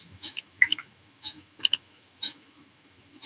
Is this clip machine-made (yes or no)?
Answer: yes